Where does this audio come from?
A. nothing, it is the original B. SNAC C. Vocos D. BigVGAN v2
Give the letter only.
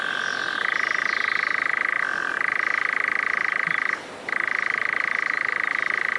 A